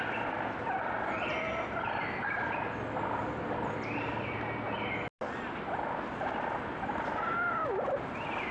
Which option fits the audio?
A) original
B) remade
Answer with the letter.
A